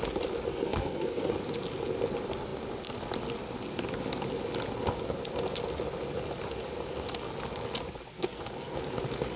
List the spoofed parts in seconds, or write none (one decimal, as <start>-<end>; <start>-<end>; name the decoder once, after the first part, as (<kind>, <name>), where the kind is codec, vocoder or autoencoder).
0.5-1.3 (codec, SNAC); 8.1-8.8